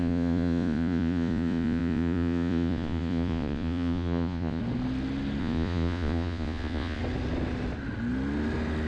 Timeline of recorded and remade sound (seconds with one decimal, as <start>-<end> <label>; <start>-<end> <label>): 0.0-4.6 remade; 4.6-5.4 recorded; 5.4-7.0 remade; 7.0-8.9 recorded

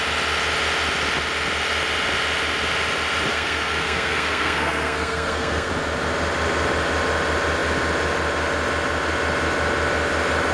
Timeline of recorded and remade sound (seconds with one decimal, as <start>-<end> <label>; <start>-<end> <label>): 0.0-3.3 recorded; 3.3-5.7 remade; 5.7-10.5 recorded

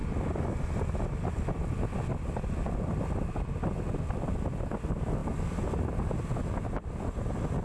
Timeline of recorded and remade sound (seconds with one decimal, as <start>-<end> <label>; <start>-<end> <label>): 0.0-7.6 recorded

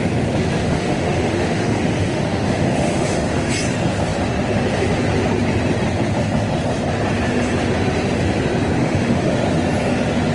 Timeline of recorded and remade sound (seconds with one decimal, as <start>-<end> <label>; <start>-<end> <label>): 0.0-0.6 recorded; 0.6-3.5 remade; 3.5-8.8 recorded; 8.8-9.3 remade; 9.3-10.3 recorded

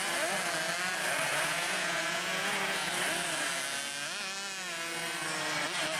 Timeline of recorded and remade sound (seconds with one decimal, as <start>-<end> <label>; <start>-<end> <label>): 0.0-1.3 recorded; 1.3-2.9 remade; 2.9-6.0 recorded